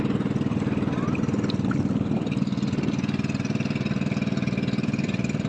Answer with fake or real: fake